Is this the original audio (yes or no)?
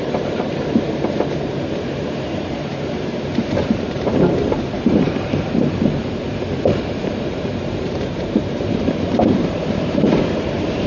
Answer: no